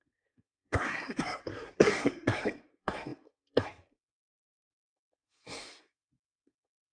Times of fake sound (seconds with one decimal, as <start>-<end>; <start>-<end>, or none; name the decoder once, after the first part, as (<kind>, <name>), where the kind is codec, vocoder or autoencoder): 0.0-6.9 (codec, SNAC)